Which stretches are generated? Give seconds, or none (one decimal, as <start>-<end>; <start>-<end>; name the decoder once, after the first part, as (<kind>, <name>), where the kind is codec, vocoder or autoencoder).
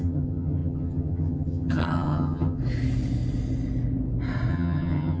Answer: 0.0-2.6 (vocoder, HiFi-GAN); 4.5-5.2